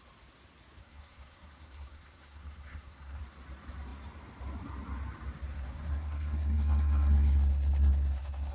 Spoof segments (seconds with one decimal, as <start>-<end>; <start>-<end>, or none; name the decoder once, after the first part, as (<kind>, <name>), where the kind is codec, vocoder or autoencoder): 0.8-3.2 (codec, SNAC); 5.5-8.5